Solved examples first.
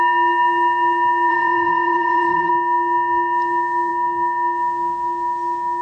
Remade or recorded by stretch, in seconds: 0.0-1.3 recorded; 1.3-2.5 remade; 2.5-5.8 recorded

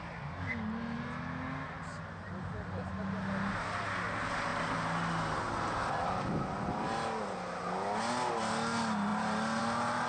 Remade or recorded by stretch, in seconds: 0.0-10.1 recorded

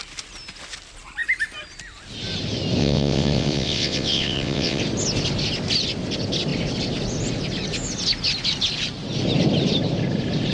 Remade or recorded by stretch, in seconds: 0.0-2.8 recorded; 2.8-4.8 remade; 4.8-10.5 recorded

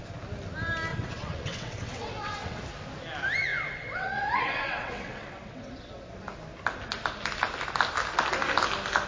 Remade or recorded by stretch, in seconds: 0.0-0.9 recorded; 0.9-2.6 remade; 2.6-3.5 recorded; 3.5-6.0 remade; 6.0-9.1 recorded

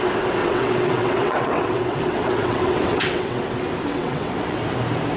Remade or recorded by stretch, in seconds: 0.0-0.4 recorded; 0.4-3.4 remade; 3.4-3.9 recorded; 3.9-4.6 remade; 4.6-5.2 recorded

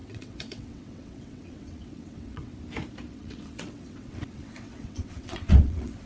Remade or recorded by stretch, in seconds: 0.0-2.5 remade; 2.5-3.1 recorded; 3.1-6.1 remade